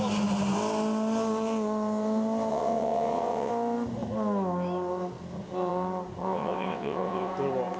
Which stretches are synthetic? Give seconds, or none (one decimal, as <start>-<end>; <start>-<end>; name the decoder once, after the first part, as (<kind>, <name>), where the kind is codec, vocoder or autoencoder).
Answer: 2.5-3.5 (vocoder, WaveNeXt); 6.2-7.3